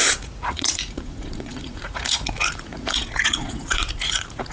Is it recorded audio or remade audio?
remade